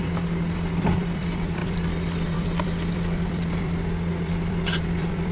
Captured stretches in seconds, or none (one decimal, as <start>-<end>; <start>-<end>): none